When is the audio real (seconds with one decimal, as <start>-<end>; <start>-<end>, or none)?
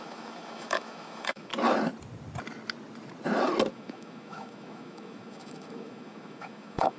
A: 1.5-3.7